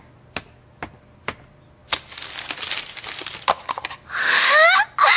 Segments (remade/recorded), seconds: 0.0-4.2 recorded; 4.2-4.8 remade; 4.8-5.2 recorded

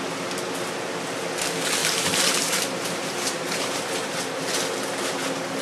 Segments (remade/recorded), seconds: 0.0-1.8 recorded; 1.8-3.9 remade; 3.9-5.6 recorded

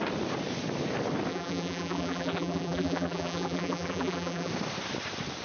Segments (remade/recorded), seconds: 0.0-1.3 recorded; 1.3-4.5 remade; 4.5-5.4 recorded